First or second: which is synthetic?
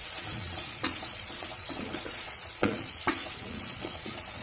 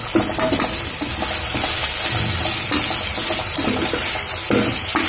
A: first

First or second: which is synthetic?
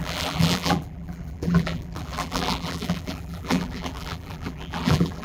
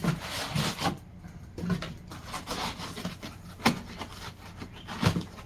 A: first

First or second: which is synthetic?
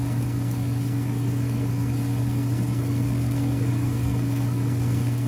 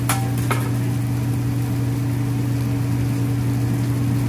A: first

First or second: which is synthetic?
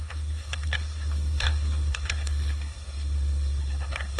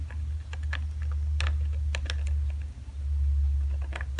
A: first